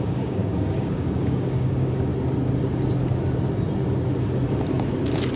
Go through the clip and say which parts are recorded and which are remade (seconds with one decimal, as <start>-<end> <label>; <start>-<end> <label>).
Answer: 0.0-2.1 remade; 2.1-5.4 recorded